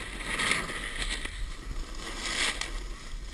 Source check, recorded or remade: recorded